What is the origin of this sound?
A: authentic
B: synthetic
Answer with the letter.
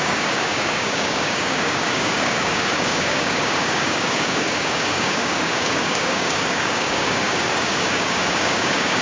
B